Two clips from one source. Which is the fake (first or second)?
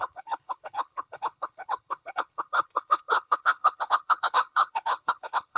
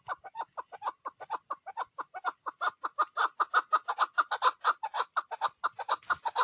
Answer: first